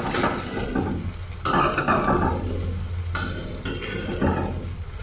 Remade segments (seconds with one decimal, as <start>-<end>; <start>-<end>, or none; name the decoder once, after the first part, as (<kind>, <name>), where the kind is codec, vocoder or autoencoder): none